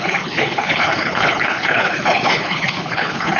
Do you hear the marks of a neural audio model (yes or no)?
yes